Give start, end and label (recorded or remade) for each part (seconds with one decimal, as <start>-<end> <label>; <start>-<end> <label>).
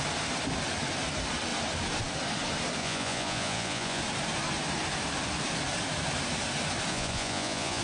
0.0-2.8 recorded; 2.8-4.0 remade; 4.0-6.9 recorded; 6.9-7.8 remade